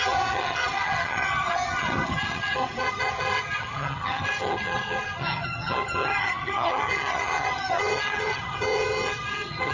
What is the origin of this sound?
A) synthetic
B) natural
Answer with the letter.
A